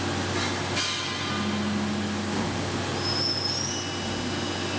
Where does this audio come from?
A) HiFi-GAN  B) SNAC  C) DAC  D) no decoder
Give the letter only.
D